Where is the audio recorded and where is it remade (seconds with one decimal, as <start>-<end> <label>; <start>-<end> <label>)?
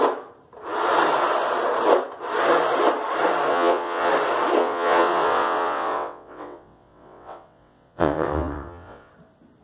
0.0-3.5 recorded; 3.5-4.1 remade; 4.1-4.6 recorded; 4.6-9.1 remade; 9.1-9.6 recorded